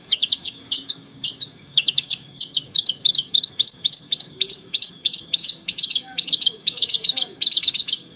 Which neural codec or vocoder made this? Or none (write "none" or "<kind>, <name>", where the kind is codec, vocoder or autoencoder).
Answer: codec, DAC